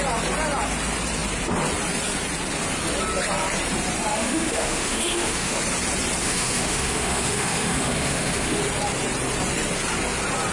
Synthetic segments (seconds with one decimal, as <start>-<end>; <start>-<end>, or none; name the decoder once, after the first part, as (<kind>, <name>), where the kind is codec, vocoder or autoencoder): 4.1-5.6 (autoencoder, DAC-VAE); 6.2-8.6